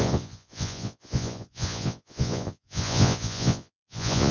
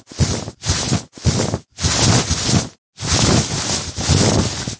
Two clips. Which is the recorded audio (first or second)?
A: second